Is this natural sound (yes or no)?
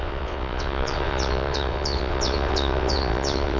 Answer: no